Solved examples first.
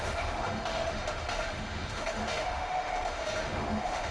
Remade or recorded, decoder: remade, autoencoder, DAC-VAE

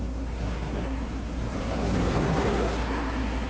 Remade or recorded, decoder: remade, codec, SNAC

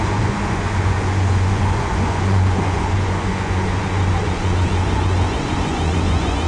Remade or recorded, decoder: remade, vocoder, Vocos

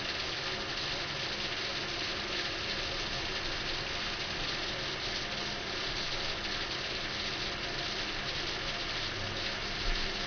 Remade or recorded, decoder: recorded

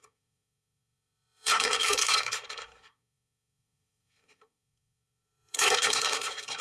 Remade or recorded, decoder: remade, codec, SNAC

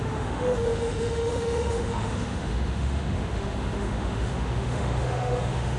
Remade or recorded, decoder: remade, autoencoder, DAC-VAE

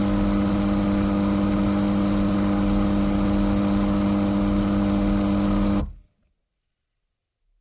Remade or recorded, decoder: recorded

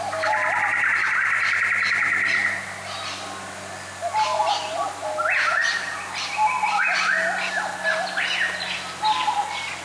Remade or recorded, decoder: recorded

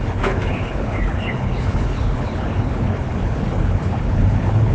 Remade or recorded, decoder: remade, codec, HILCodec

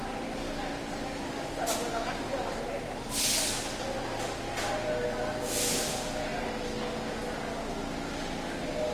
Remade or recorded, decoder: recorded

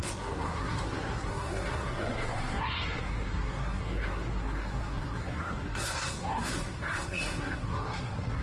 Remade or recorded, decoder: remade, codec, SNAC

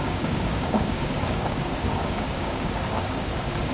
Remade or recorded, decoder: remade, codec, DAC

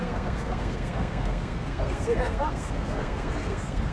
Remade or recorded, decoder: remade, codec, SNAC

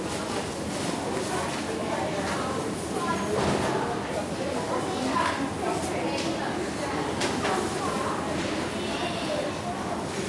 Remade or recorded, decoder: recorded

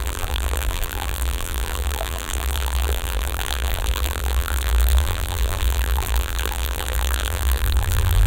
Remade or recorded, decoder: remade, vocoder, BigVGAN v2